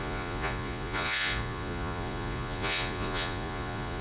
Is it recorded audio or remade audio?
remade